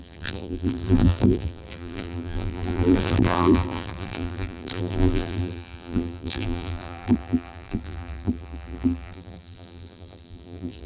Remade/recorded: remade